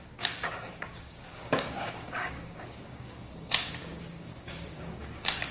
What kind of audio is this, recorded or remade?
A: remade